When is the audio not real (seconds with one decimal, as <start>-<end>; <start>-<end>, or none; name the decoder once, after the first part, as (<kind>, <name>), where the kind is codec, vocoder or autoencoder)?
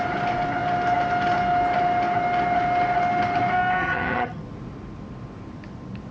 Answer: 3.8-4.4 (vocoder, HiFi-GAN)